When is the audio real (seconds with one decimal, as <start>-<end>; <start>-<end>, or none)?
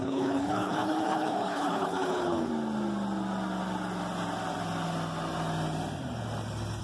2.5-6.8